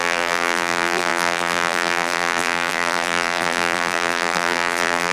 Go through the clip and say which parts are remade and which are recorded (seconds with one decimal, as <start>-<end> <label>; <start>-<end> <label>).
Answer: 0.0-5.1 remade